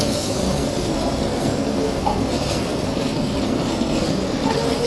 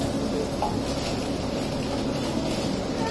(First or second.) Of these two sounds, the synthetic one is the first